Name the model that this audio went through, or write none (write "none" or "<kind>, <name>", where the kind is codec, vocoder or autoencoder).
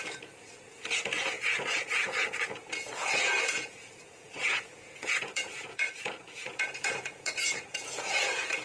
vocoder, Vocos